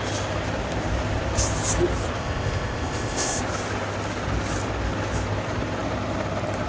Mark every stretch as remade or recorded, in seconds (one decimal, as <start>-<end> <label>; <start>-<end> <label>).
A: 0.0-2.2 recorded; 2.2-3.4 remade; 3.4-6.7 recorded